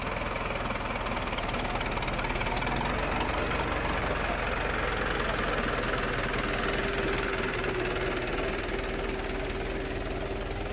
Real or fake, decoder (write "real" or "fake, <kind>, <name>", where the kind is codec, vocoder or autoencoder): real